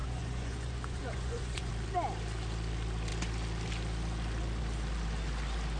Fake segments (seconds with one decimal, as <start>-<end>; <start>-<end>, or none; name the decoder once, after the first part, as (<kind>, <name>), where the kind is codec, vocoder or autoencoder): 0.0-1.7 (vocoder, Vocos)